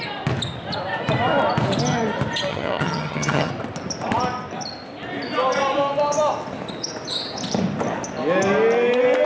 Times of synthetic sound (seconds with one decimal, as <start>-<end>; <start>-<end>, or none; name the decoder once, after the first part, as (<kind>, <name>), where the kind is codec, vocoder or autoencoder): 2.5-3.5 (vocoder, HiFi-GAN)